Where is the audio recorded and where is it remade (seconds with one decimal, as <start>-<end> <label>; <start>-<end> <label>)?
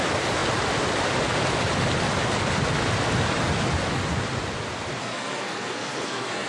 0.0-5.0 recorded; 5.0-6.5 remade